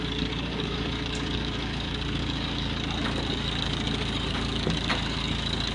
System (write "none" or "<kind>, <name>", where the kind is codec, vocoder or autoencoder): codec, DAC